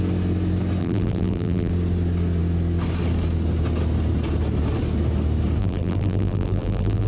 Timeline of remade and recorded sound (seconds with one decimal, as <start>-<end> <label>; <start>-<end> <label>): 0.0-0.8 recorded; 0.8-1.7 remade; 1.7-5.6 recorded; 5.6-7.1 remade